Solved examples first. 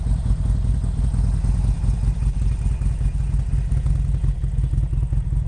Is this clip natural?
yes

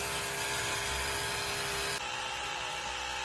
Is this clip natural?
yes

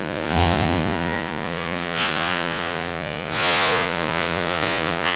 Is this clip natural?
no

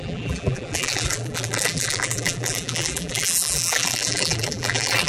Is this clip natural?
no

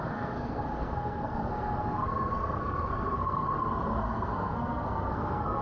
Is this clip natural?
no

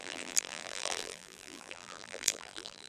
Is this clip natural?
no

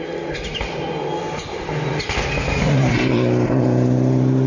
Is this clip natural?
yes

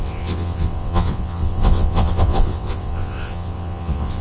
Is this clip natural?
no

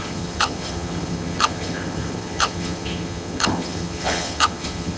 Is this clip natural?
no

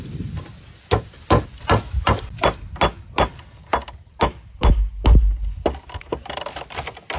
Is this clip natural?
yes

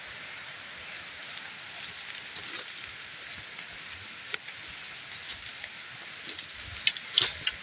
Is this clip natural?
yes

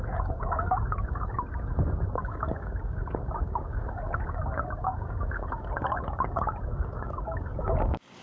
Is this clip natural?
no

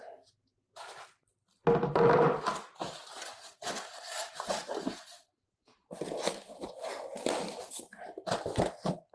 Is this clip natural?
yes